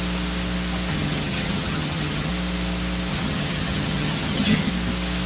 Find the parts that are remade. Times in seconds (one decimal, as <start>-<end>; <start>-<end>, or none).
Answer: 0.9-2.3; 3.1-4.7